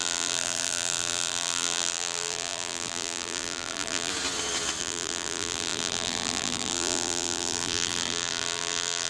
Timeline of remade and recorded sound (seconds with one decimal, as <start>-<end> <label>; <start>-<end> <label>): 0.0-4.1 remade; 4.1-4.8 recorded; 4.8-9.1 remade